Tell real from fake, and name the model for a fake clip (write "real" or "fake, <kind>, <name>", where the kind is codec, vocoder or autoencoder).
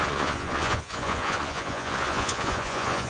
fake, vocoder, Vocos